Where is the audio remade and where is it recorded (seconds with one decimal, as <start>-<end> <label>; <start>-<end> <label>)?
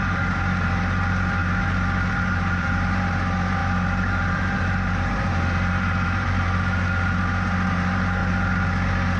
0.0-1.4 remade; 1.4-2.1 recorded; 2.1-8.2 remade; 8.2-9.2 recorded